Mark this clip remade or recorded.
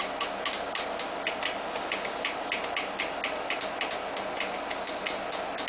recorded